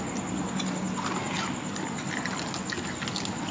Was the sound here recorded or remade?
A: recorded